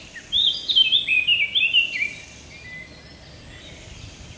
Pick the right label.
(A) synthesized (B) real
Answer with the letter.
B